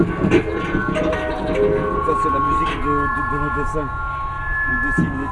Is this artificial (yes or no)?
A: no